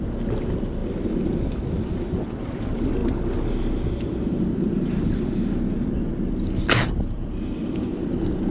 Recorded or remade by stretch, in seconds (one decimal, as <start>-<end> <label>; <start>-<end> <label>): 0.0-3.0 remade; 3.0-3.9 recorded; 3.9-8.5 remade